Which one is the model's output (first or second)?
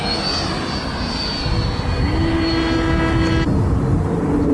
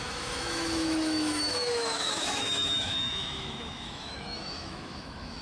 second